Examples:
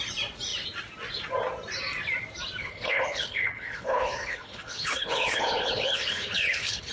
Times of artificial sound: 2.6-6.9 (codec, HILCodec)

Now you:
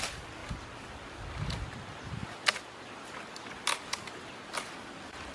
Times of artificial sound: none

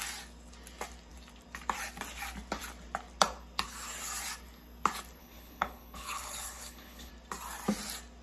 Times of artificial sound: 5.2-7.1 (codec, HILCodec)